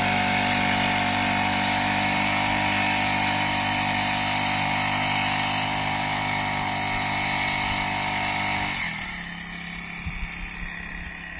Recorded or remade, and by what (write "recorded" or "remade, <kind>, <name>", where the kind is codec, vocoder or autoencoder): recorded